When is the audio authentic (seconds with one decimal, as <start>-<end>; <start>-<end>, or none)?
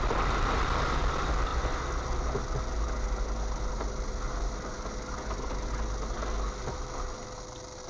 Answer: 0.0-7.9